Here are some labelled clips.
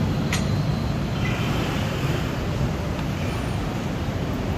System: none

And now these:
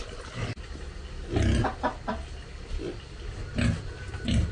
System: none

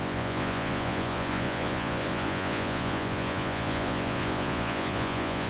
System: vocoder, Vocos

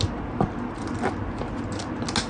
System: none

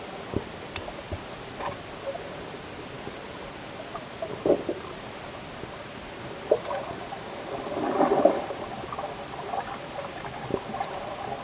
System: none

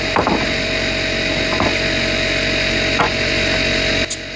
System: none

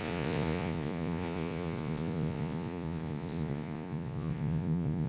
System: vocoder, Vocos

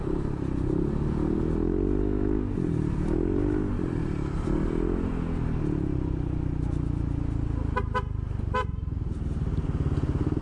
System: none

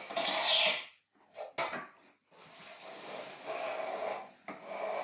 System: none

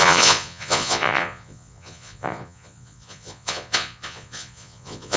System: vocoder, Vocos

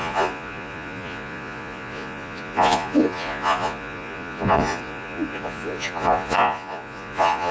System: vocoder, Vocos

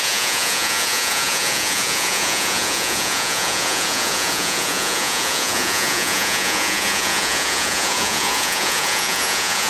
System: vocoder, Vocos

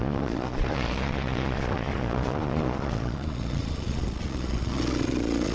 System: vocoder, Vocos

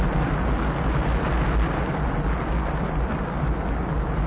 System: none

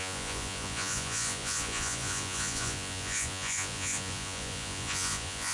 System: vocoder, Vocos